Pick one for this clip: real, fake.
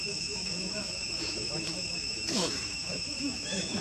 fake